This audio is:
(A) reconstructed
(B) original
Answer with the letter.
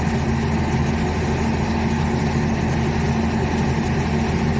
B